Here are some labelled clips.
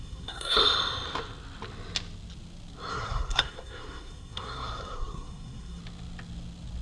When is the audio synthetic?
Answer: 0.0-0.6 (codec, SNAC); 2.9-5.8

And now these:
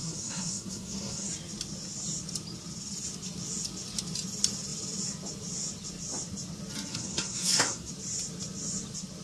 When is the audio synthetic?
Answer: 0.0-1.3 (codec, SNAC); 6.9-7.9

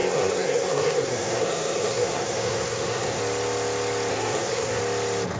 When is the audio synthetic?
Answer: 0.0-3.2 (codec, SNAC); 4.1-4.8

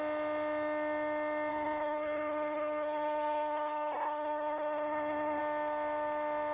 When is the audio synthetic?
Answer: 1.5-5.4 (codec, SNAC)

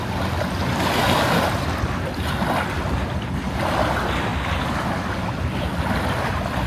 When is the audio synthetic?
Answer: none

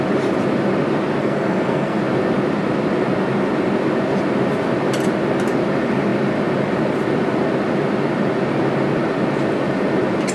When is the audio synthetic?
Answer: 1.2-2.0 (codec, SNAC)

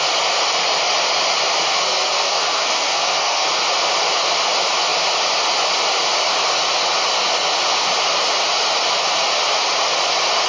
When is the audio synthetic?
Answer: 1.7-3.4 (codec, SNAC)

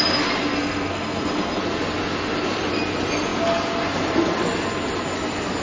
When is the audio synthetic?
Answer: 0.5-1.6 (codec, SNAC)